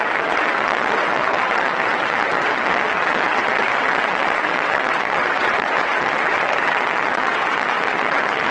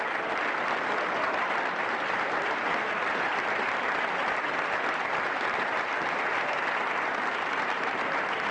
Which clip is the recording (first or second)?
second